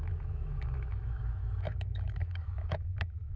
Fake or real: fake